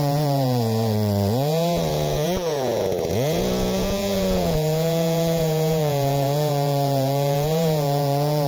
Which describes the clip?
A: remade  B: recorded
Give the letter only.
A